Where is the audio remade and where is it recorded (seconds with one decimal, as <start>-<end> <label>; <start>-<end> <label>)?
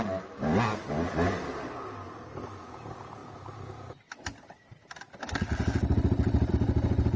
0.0-7.2 recorded